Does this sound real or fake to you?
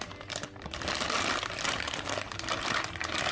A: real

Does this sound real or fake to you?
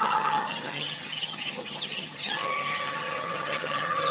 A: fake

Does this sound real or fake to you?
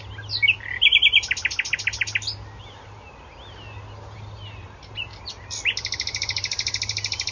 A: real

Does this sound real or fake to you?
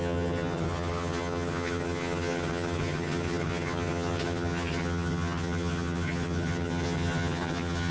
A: fake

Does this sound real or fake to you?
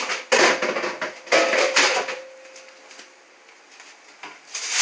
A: real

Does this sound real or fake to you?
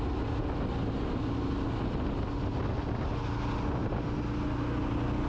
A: real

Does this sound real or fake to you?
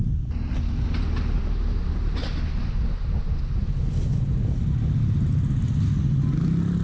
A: real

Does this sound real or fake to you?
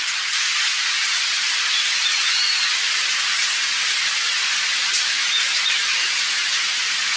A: real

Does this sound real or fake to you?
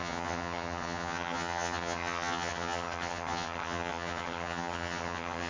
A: fake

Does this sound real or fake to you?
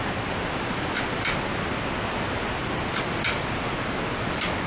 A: real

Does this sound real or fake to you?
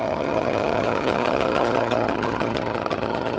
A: fake